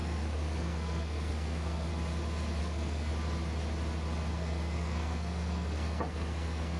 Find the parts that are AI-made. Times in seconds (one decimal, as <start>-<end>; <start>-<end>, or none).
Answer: 0.0-1.9; 2.6-3.1; 4.3-6.8